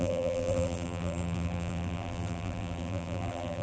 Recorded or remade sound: remade